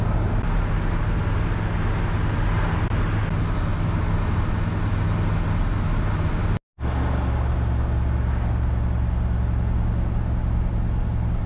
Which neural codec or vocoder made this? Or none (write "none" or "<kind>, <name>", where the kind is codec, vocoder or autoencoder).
none